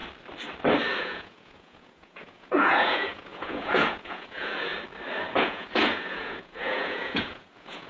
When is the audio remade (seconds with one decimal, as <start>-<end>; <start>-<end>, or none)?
1.0-4.7; 5.3-7.9